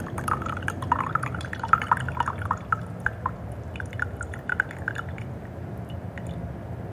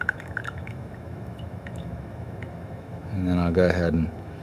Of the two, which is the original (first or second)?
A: first